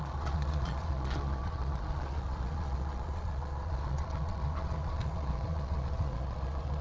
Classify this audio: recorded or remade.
remade